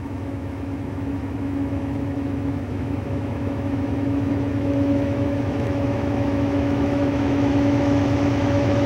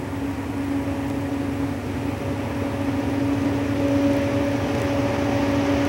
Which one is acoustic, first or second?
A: second